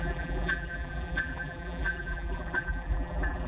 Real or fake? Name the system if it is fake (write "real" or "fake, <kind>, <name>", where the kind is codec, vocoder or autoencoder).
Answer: fake, vocoder, BigVGAN v2